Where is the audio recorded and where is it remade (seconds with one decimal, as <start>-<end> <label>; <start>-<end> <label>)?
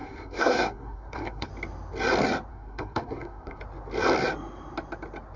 0.0-1.5 remade; 1.5-2.5 recorded; 2.5-3.6 remade; 3.6-5.4 recorded